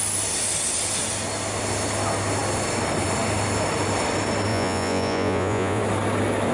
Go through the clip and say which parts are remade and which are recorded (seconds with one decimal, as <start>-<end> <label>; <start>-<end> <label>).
0.0-4.5 recorded; 4.5-5.8 remade; 5.8-6.5 recorded

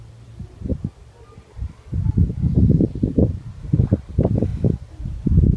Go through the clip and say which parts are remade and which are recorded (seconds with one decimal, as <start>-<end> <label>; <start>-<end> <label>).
0.0-4.5 remade; 4.5-5.6 recorded

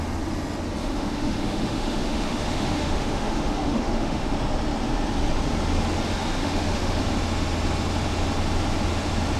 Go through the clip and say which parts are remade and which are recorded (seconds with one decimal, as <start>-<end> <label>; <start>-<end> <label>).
0.0-0.8 recorded; 0.8-4.3 remade; 4.3-6.4 recorded; 6.4-7.0 remade; 7.0-9.4 recorded